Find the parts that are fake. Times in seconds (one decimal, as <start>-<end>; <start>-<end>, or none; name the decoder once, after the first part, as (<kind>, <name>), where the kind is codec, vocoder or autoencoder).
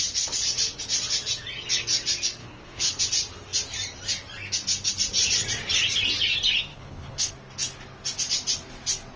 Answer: 2.4-3.0 (codec, HILCodec); 6.7-7.3